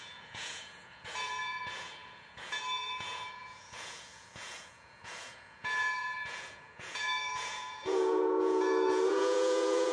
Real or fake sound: fake